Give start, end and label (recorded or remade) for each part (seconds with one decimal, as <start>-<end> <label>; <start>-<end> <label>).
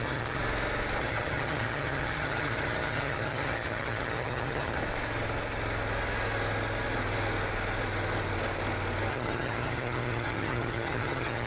0.0-0.4 remade; 0.4-1.0 recorded; 1.0-4.8 remade; 4.8-9.1 recorded; 9.1-11.5 remade